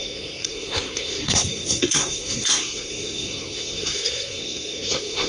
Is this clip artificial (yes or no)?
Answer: yes